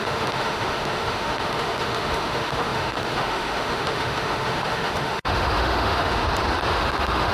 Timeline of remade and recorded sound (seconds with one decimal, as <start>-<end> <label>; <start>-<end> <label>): 0.0-6.2 remade; 6.2-6.7 recorded; 6.7-7.3 remade